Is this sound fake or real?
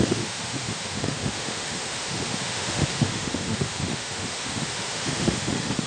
fake